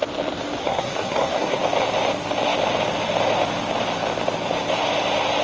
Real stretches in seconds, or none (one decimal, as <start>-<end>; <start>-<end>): 0.0-0.6; 1.6-5.4